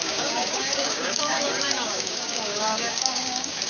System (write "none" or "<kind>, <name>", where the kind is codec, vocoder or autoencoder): codec, DAC